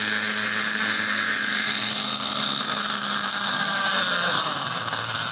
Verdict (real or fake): fake